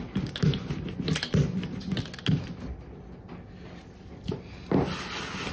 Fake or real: real